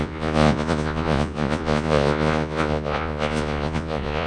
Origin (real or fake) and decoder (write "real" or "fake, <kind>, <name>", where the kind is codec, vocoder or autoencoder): fake, vocoder, Vocos